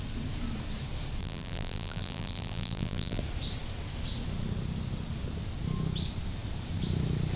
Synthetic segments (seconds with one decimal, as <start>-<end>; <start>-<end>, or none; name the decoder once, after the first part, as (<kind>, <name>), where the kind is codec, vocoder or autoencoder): 1.2-3.2 (vocoder, BigVGAN v2)